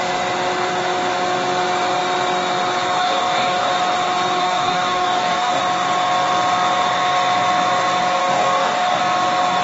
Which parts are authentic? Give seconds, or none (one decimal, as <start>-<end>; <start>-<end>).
0.0-3.0; 3.7-4.4; 5.6-8.2; 9.0-9.6